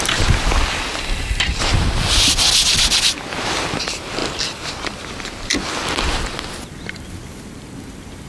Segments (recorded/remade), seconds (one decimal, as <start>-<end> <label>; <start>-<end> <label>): 0.0-8.3 recorded